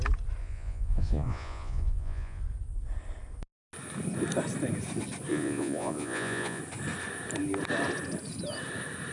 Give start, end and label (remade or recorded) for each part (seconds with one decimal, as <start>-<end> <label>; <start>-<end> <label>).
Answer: 0.0-0.4 recorded; 0.4-2.4 remade; 2.4-5.3 recorded; 5.3-6.6 remade; 6.6-9.1 recorded